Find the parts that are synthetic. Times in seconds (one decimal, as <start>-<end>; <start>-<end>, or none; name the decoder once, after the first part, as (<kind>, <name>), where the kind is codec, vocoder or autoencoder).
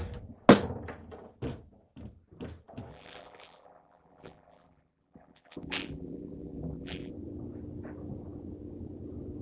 2.9-7.1 (vocoder, BigVGAN v2)